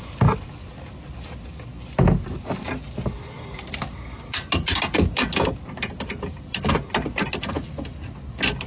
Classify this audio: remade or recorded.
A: recorded